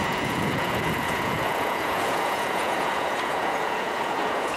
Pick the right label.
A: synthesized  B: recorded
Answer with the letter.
A